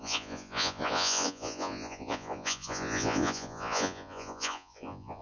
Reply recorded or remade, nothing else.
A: remade